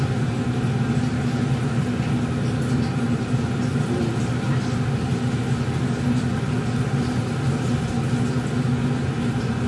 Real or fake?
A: real